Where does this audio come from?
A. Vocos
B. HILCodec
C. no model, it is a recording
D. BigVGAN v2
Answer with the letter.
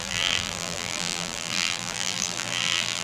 D